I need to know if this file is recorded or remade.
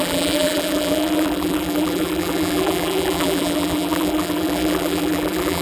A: remade